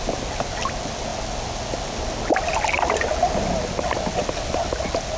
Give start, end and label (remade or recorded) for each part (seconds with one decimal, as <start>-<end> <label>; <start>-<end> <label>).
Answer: 0.0-5.2 recorded